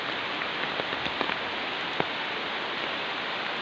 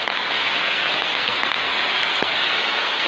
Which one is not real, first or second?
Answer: second